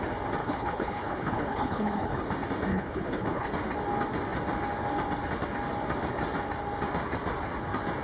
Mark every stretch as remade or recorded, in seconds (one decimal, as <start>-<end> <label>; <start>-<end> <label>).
0.0-0.4 recorded; 0.4-2.2 remade; 2.2-2.7 recorded; 2.7-3.5 remade; 3.5-8.0 recorded